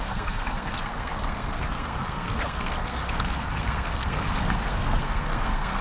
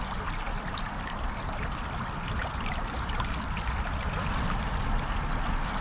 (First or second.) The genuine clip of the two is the second